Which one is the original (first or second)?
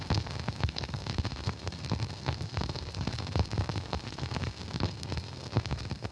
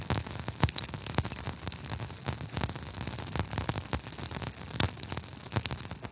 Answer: second